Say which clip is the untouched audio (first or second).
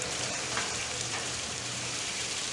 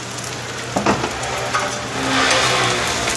second